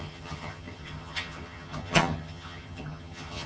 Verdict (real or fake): fake